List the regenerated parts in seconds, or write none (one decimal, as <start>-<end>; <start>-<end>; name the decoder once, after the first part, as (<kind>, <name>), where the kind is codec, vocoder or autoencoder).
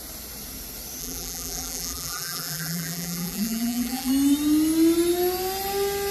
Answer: 1.0-4.1 (vocoder, BigVGAN v2)